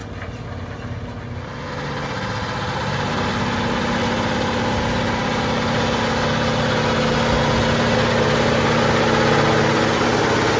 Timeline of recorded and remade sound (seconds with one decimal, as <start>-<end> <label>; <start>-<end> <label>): 0.0-10.6 recorded